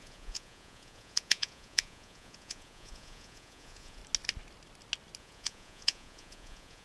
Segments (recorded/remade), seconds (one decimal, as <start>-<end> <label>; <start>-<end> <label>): 0.0-4.0 remade; 4.0-5.2 recorded; 5.2-6.8 remade